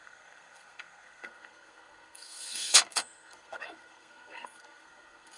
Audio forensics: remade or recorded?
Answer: remade